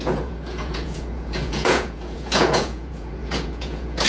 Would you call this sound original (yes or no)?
no